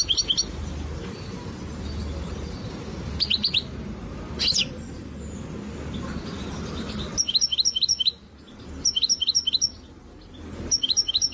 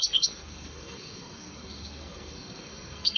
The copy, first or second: second